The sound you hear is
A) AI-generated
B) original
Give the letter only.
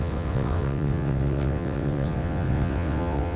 A